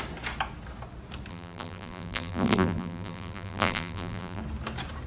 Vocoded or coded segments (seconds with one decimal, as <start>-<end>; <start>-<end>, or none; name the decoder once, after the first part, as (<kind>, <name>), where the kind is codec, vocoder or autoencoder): 1.3-4.4 (vocoder, BigVGAN v2)